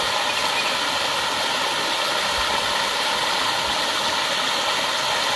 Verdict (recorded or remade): recorded